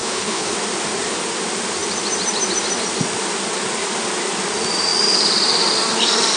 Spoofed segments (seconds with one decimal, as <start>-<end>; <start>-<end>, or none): 0.0-0.5